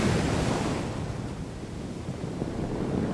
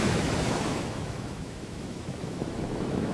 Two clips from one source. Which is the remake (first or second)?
second